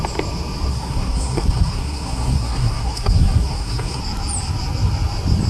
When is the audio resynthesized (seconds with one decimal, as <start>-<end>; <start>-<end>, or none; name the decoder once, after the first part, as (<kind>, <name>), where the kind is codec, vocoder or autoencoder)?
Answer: 0.7-4.0 (codec, SNAC)